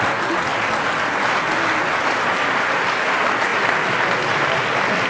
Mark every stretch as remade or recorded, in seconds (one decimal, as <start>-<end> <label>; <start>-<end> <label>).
0.0-5.1 recorded